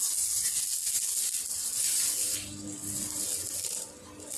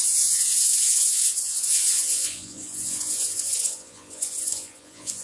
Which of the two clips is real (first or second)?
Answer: first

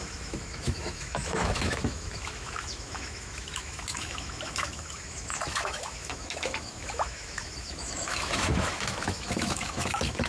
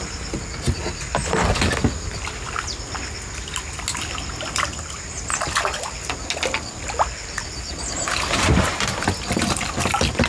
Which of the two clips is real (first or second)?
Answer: second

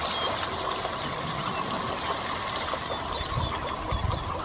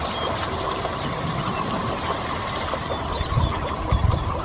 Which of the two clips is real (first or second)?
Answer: first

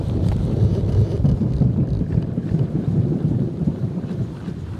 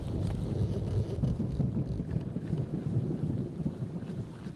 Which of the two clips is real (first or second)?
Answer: second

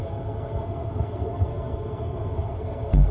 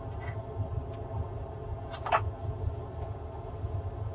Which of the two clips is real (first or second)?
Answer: second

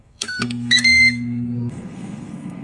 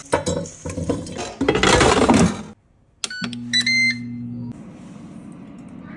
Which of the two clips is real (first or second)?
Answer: second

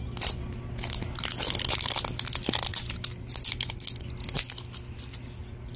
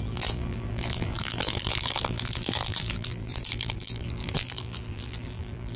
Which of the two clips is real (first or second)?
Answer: first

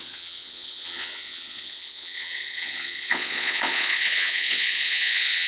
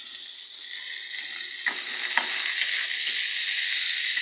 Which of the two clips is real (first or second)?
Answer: second